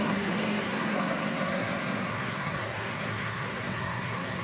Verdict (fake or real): fake